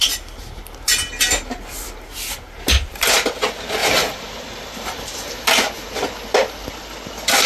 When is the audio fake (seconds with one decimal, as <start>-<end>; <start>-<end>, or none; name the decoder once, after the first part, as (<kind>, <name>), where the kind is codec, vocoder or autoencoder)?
3.8-5.9 (vocoder, BigVGAN v2)